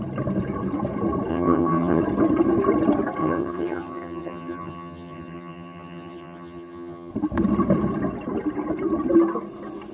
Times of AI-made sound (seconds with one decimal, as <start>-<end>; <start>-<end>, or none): 1.3-2.0; 3.2-7.1